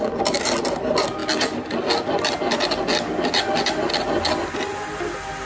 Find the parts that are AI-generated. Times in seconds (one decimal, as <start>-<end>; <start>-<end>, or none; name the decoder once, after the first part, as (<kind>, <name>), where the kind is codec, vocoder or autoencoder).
none